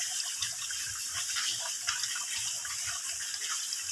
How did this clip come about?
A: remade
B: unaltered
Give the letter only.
B